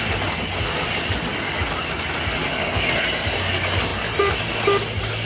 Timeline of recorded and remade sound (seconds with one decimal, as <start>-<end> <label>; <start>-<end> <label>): 0.0-5.3 recorded